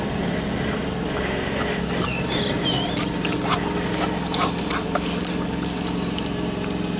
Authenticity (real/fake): real